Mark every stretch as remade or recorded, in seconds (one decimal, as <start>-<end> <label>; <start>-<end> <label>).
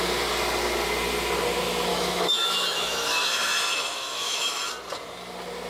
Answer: 0.0-1.9 recorded; 1.9-4.7 remade; 4.7-5.7 recorded